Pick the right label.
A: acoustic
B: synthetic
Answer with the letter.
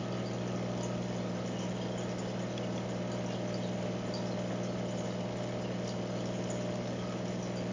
A